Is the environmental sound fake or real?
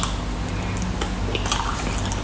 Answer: real